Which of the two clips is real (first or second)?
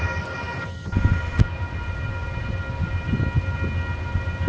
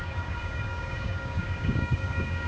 first